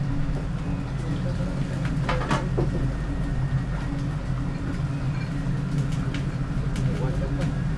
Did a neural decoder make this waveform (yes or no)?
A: no